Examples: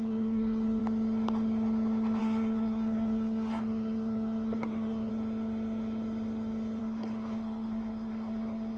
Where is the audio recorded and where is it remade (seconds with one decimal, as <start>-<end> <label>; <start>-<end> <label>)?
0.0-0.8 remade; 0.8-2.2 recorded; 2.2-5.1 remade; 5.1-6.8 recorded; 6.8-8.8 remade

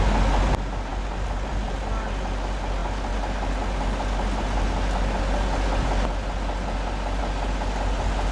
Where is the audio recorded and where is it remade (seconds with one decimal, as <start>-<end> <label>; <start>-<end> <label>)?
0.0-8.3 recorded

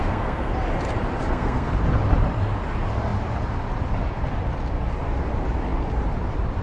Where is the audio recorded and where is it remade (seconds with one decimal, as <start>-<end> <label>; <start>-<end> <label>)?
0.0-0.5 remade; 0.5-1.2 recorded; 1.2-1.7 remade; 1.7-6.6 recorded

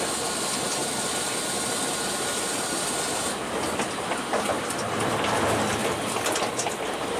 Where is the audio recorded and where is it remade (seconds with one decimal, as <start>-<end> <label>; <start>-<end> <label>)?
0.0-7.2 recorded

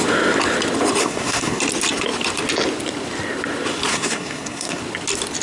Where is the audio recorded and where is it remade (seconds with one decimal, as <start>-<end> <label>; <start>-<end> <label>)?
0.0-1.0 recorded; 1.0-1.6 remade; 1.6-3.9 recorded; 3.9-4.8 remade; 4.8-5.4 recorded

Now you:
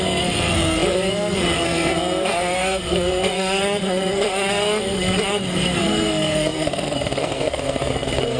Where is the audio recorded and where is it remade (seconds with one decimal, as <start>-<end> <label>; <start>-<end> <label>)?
0.0-8.4 remade